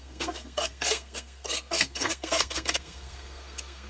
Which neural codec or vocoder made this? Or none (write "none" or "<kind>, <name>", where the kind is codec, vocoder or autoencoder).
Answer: codec, SNAC